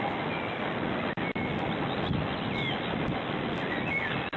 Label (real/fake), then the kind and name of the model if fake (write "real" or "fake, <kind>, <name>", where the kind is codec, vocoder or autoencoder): real